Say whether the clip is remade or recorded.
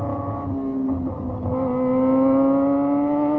recorded